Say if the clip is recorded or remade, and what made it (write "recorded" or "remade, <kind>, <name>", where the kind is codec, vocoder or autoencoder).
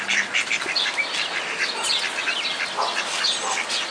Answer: recorded